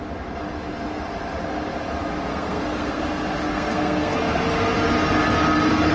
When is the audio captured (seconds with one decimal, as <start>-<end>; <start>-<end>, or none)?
0.0-2.3; 3.0-3.5; 4.3-5.9